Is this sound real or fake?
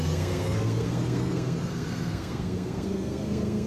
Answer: fake